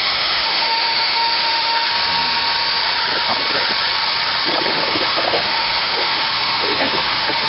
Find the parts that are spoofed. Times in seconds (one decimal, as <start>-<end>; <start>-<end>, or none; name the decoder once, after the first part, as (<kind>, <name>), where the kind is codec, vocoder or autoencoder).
0.0-1.9 (autoencoder, DAC-VAE); 4.7-7.5

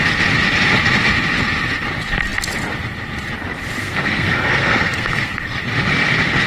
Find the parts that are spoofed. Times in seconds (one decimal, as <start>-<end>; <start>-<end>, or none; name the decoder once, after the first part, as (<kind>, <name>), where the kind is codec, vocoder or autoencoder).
3.8-5.4 (codec, SNAC)

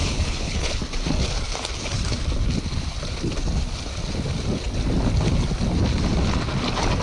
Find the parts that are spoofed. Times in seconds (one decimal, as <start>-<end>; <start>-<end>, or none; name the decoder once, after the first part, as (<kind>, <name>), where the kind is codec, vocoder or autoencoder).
0.0-0.8 (codec, HILCodec)

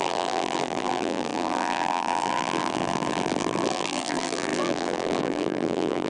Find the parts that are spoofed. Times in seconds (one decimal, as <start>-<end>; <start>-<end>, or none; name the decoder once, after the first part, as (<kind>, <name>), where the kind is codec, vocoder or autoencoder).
0.0-6.1 (vocoder, BigVGAN v2)

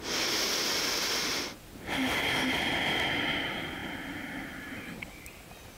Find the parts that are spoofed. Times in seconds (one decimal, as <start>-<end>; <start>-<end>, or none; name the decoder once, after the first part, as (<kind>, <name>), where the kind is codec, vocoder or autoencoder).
3.8-5.3 (vocoder, BigVGAN v2)